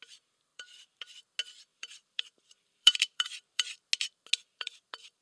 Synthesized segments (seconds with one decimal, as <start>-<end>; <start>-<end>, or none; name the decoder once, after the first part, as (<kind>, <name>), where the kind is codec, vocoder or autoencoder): 0.5-1.2 (vocoder, BigVGAN v2); 1.7-3.9; 4.4-5.2